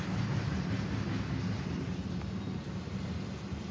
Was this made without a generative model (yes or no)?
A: yes